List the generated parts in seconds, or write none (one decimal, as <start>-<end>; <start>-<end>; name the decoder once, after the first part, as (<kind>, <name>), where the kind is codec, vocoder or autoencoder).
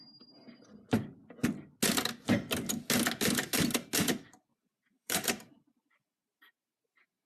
4.5-6.5 (vocoder, BigVGAN v2)